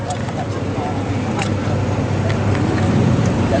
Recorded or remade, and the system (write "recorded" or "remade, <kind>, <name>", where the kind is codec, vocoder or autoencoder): recorded